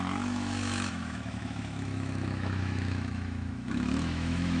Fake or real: fake